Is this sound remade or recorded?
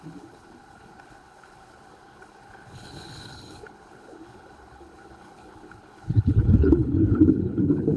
remade